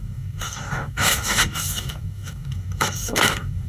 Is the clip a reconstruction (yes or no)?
yes